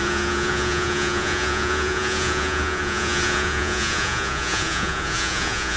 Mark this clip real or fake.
fake